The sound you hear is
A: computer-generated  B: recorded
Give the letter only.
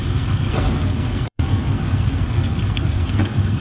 A